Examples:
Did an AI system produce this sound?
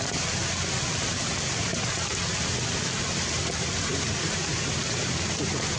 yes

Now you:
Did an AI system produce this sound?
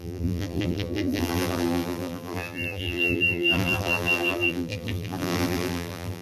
yes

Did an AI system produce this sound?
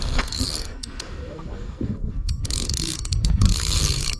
yes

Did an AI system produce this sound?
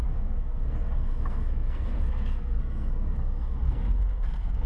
yes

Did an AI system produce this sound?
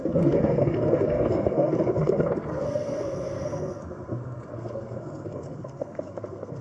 yes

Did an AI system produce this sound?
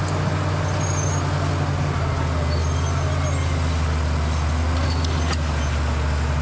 no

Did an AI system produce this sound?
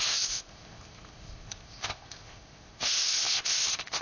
yes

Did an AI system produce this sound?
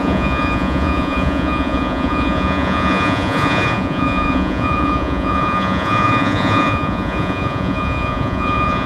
yes